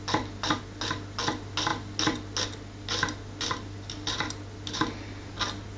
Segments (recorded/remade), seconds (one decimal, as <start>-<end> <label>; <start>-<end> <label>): 0.0-5.8 recorded